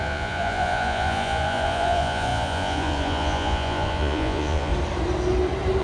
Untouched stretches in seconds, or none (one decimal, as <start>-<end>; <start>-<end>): 4.7-5.8

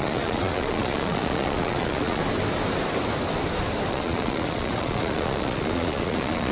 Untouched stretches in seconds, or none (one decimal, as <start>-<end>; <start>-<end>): 2.2-3.9

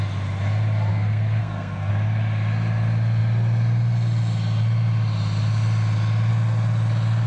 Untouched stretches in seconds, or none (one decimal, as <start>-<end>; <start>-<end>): 0.0-0.9; 1.9-7.3